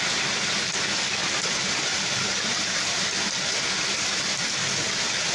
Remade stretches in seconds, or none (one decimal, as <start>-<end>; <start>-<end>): none